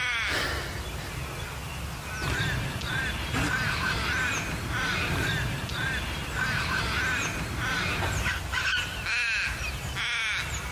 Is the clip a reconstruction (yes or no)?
no